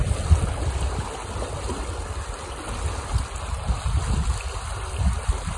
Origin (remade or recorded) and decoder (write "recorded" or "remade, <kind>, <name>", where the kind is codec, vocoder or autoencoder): recorded